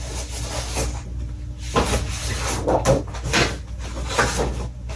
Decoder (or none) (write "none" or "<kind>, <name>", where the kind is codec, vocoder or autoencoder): none